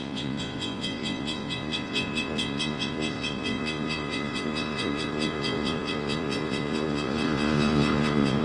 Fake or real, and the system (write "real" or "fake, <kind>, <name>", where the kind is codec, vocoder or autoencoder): fake, vocoder, Vocos